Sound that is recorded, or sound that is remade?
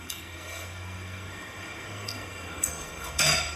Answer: remade